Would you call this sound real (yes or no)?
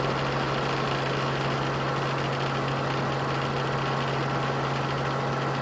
yes